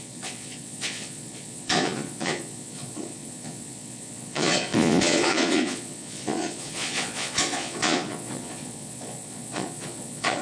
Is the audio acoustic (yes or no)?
no